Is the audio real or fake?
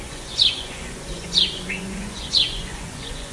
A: fake